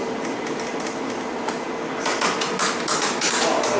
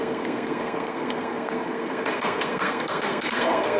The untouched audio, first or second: first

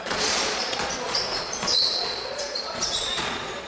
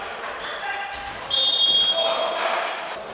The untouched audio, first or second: second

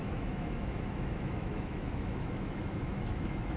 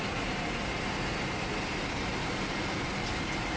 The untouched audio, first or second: second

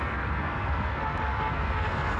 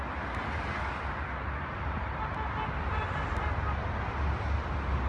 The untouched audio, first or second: second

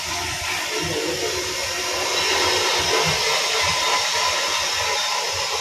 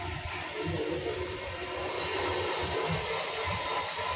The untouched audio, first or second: first